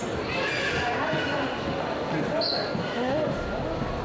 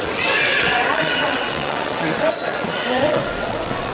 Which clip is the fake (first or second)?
second